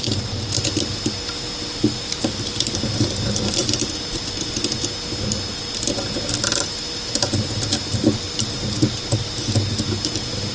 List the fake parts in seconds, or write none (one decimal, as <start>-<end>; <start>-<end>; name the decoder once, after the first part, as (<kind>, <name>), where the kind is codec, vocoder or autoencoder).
none